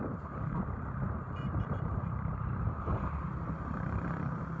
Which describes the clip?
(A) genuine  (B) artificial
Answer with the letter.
B